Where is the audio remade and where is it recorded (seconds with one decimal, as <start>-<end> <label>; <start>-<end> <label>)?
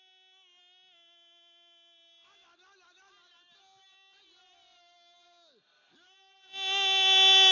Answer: 0.0-7.5 recorded